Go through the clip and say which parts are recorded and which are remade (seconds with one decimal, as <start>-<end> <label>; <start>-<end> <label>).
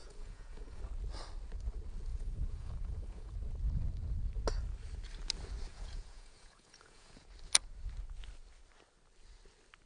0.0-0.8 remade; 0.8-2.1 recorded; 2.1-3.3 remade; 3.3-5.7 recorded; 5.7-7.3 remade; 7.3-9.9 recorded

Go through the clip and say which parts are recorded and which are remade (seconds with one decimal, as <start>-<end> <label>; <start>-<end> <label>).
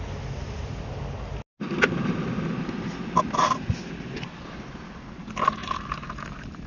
0.0-6.7 recorded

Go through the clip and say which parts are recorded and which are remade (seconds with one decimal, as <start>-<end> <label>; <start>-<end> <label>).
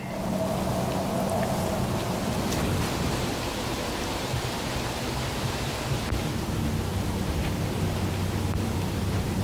0.0-9.4 recorded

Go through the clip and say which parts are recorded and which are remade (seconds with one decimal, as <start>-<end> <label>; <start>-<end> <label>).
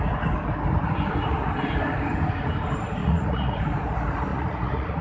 0.0-3.0 recorded; 3.0-3.6 remade; 3.6-4.3 recorded; 4.3-5.0 remade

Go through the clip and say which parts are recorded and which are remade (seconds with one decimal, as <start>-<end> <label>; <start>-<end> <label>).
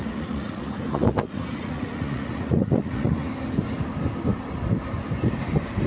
0.0-3.3 remade; 3.3-5.9 recorded